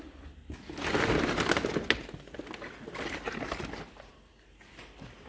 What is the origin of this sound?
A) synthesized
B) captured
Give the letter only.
B